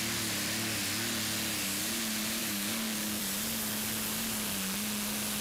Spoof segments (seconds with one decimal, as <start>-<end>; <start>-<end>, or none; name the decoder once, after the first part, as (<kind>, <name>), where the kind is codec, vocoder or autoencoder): 2.4-3.2 (codec, DAC)